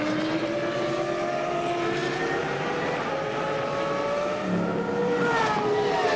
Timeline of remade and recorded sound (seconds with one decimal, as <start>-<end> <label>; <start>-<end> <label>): 0.0-5.0 recorded; 5.0-6.2 remade